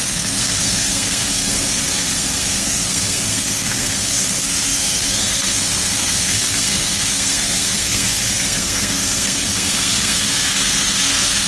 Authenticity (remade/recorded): remade